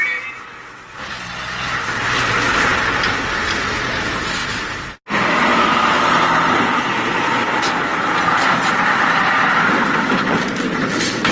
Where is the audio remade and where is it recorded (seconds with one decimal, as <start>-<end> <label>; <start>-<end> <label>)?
0.0-5.5 recorded; 5.5-6.1 remade; 6.1-11.3 recorded